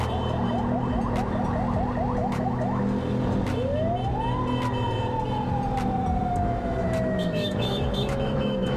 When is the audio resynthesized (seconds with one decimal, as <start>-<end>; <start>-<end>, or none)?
2.2-2.8; 6.2-8.8